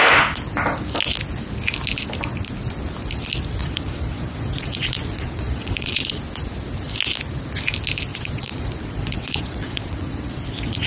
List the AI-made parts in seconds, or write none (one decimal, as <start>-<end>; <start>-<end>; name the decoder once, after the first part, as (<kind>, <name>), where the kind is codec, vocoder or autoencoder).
3.6-6.2 (vocoder, Vocos); 8.1-10.9